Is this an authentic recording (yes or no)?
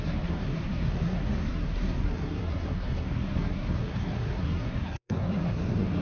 no